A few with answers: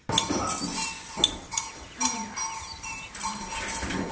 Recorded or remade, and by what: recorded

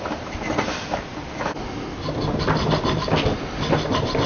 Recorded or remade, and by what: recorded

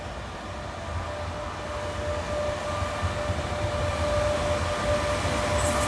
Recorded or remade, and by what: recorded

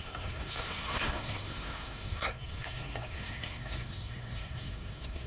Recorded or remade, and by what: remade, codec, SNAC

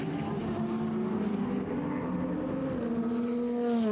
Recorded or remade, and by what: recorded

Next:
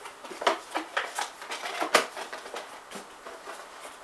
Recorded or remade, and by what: recorded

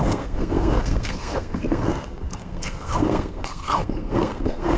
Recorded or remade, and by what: remade, codec, SNAC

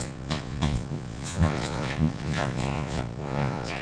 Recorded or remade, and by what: remade, vocoder, Vocos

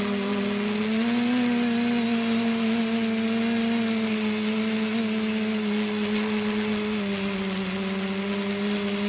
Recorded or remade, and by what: recorded